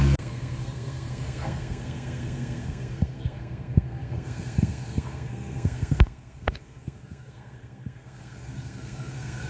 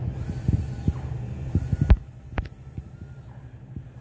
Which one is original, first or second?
second